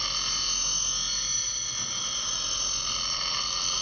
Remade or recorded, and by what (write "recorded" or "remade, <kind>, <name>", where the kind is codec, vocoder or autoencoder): recorded